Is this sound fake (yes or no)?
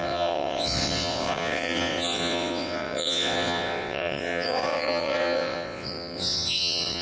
yes